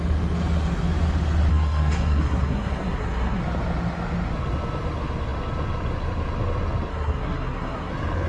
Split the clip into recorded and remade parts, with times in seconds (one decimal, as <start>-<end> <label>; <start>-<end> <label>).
0.0-1.5 recorded; 1.5-3.4 remade; 3.4-6.9 recorded; 6.9-7.9 remade; 7.9-8.3 recorded